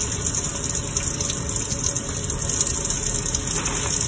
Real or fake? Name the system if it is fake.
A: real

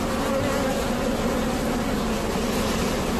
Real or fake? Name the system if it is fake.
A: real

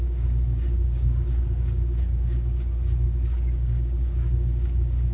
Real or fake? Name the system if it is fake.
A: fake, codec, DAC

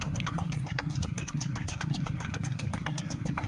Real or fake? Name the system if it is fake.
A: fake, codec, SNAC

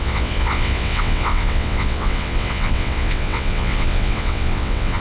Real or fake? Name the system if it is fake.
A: fake, vocoder, WaveNeXt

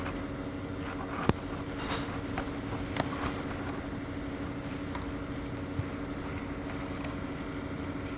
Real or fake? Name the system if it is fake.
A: real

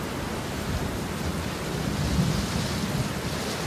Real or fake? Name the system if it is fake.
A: real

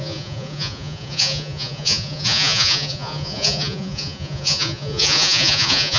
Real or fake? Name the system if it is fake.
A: fake, vocoder, Vocos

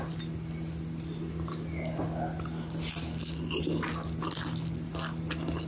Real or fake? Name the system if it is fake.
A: real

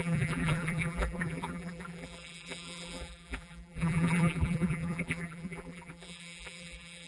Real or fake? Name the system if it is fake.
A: fake, vocoder, BigVGAN v2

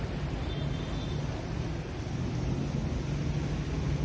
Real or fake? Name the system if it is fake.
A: real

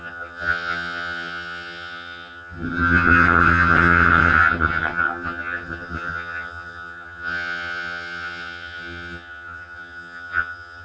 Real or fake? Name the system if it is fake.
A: fake, vocoder, HiFi-GAN